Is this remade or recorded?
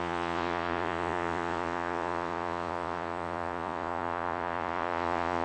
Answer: remade